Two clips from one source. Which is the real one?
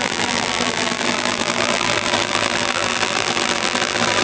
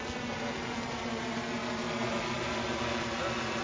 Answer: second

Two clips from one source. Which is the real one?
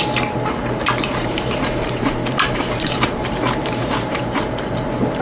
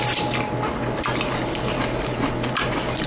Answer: second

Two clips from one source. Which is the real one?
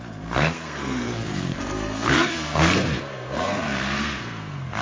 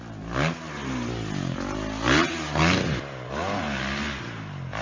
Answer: second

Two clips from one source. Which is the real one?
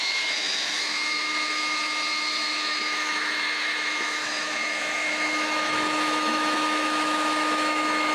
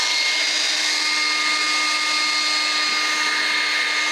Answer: second